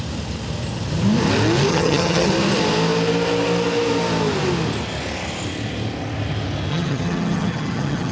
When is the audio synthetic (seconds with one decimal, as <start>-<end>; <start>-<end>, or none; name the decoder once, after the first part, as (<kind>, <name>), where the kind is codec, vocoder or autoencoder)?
1.7-2.3 (vocoder, HiFi-GAN); 6.7-8.1